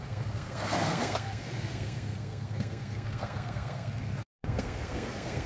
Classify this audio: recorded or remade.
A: remade